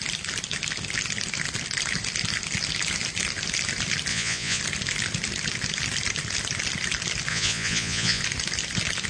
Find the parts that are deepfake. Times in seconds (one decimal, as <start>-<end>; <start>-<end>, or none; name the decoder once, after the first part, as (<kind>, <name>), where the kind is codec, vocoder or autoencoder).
4.1-4.6 (vocoder, Vocos); 7.3-8.2